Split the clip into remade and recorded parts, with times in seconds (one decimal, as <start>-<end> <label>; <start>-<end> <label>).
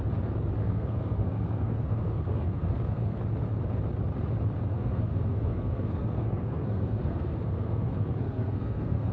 0.0-0.6 recorded; 0.6-3.2 remade; 3.2-4.7 recorded; 4.7-9.1 remade